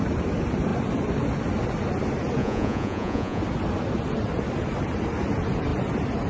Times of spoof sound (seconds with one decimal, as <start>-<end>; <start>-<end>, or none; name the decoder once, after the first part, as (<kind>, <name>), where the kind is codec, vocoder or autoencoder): 2.4-3.4 (vocoder, Vocos)

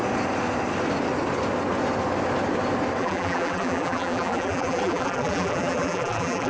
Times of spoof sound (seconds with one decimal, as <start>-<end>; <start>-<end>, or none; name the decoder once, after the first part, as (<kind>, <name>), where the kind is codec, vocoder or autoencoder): 3.0-6.5 (vocoder, BigVGAN v2)

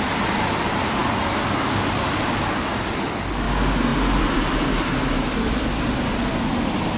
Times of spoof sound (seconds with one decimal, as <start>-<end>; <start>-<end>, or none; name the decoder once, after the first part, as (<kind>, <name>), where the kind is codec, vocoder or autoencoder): none

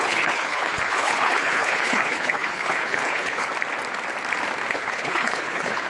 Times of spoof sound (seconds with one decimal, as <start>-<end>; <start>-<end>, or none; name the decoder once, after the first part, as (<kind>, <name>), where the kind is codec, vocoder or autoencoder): 0.0-3.5 (codec, HILCodec); 4.7-5.9

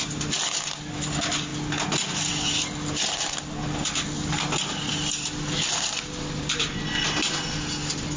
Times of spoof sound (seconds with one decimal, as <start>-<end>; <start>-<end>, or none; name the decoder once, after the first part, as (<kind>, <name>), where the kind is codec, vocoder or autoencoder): none

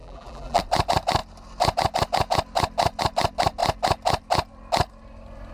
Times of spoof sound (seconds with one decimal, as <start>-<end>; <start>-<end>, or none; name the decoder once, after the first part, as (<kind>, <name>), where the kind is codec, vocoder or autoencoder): 0.0-0.6 (vocoder, BigVGAN v2)